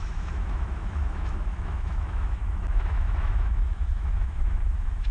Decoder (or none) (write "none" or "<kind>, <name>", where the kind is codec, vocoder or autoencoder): autoencoder, DAC-VAE